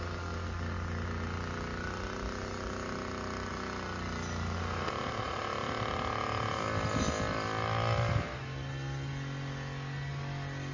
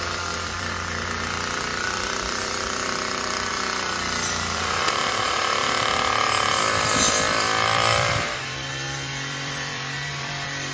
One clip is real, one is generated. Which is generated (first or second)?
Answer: second